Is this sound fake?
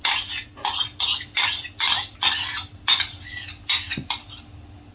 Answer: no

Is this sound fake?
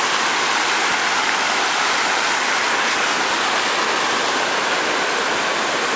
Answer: no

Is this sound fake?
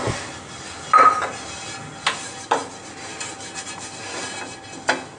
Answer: no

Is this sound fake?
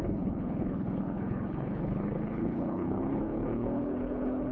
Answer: yes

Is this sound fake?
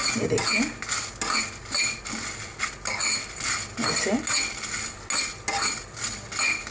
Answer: no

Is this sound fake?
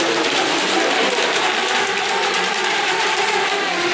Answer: no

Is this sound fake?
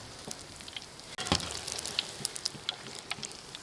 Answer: no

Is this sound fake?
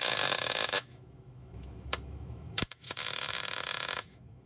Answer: yes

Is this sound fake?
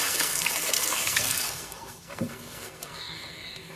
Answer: yes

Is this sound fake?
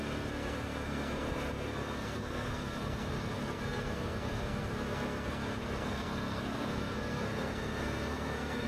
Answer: yes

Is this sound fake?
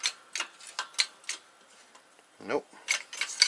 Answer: no